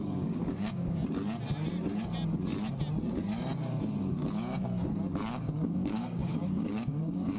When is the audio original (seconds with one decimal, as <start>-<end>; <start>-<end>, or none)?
1.0-5.4